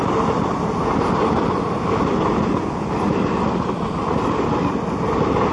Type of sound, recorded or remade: recorded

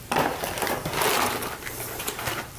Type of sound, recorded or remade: remade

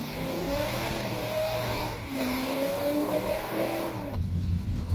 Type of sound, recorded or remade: remade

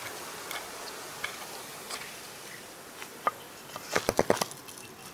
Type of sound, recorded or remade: recorded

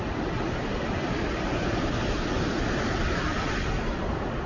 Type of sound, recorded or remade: recorded